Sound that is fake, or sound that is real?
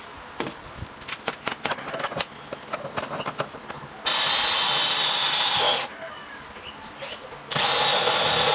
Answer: real